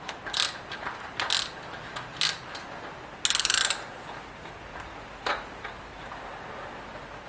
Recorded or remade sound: recorded